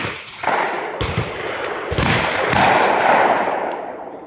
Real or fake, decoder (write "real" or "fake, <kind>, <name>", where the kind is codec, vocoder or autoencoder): fake, vocoder, BigVGAN v2